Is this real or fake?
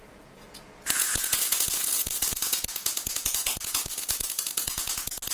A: fake